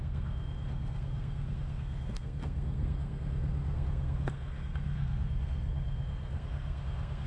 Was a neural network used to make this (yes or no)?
yes